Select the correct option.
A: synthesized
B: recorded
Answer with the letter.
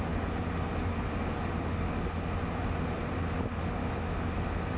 B